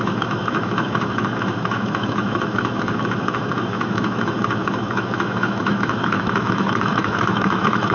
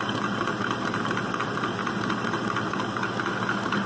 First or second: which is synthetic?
first